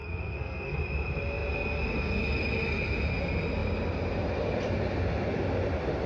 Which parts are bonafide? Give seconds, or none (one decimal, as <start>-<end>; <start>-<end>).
0.8-6.1